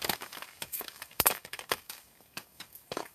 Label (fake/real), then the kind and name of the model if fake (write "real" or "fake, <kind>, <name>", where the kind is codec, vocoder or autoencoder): fake, codec, DAC